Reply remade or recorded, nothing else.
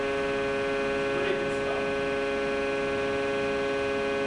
recorded